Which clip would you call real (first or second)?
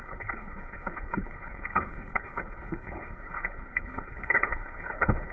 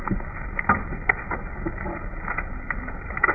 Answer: second